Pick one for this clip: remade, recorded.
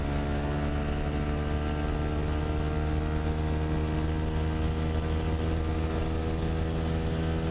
recorded